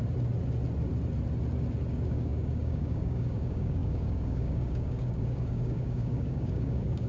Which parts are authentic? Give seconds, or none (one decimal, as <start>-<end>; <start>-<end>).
0.0-1.9